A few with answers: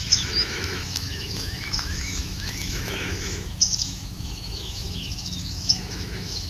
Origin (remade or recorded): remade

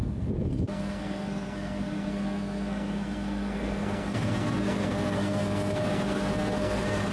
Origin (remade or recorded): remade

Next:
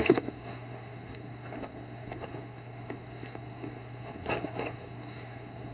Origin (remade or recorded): remade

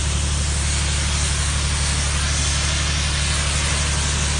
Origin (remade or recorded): recorded